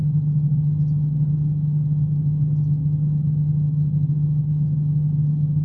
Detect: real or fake real